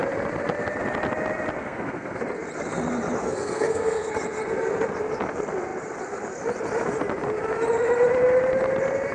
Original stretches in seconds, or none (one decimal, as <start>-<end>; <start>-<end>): 0.0-1.6; 2.2-3.2; 4.1-9.1